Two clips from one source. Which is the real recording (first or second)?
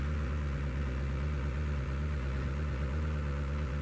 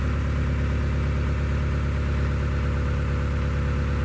second